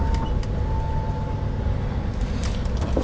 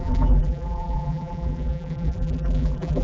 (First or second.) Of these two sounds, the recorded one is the first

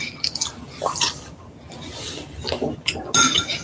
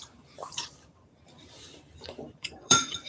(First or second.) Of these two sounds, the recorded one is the first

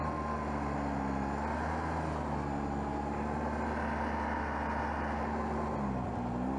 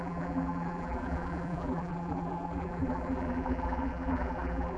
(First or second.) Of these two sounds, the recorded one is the first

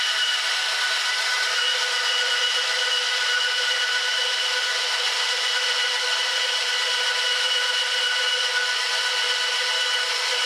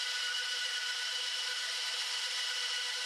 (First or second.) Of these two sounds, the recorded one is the first